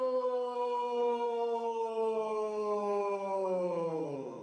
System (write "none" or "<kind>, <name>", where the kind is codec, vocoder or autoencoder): codec, SNAC